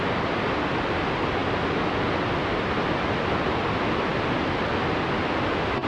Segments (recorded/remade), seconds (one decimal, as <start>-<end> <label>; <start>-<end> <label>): 0.0-5.9 recorded